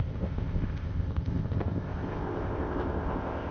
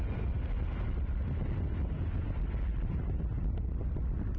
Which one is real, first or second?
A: second